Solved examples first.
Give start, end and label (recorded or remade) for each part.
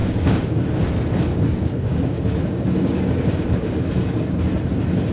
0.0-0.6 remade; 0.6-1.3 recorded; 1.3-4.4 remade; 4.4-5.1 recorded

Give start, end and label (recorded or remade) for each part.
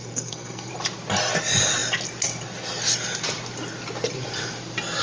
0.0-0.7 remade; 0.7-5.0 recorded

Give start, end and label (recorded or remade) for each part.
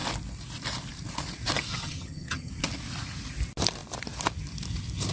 0.0-1.7 recorded; 1.7-2.5 remade; 2.5-5.1 recorded